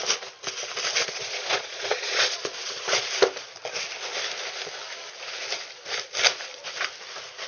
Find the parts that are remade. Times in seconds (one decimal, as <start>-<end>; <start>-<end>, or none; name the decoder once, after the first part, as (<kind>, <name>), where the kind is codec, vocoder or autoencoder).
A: 1.0-3.1 (vocoder, Vocos)